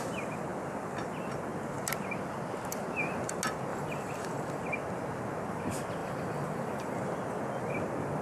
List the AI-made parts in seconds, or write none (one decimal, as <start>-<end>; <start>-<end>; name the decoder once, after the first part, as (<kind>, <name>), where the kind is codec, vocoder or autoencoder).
3.7-4.6 (vocoder, BigVGAN v2); 6.0-7.0